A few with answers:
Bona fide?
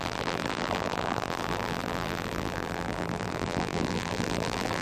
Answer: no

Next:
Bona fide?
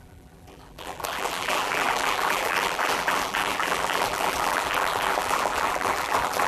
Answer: no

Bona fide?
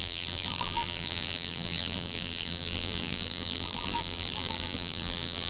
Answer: no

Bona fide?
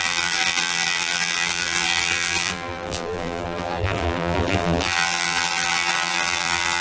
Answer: no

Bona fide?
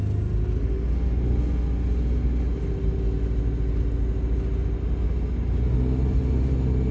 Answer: yes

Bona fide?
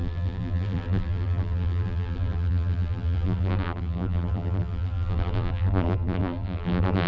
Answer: no